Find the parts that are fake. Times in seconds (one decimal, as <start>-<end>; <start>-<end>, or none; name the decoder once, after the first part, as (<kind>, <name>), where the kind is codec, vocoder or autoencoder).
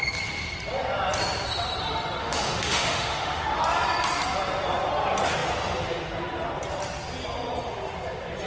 2.2-3.6 (autoencoder, DAC-VAE)